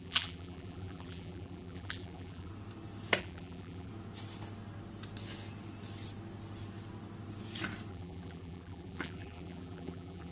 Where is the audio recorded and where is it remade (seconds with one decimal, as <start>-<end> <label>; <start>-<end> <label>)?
0.0-2.5 remade; 2.5-3.2 recorded; 3.2-3.9 remade; 3.9-7.9 recorded; 7.9-10.3 remade